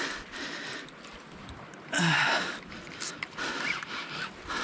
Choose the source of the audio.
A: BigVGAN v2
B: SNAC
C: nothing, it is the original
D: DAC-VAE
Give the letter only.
C